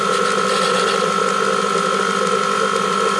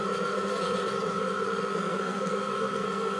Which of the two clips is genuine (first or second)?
first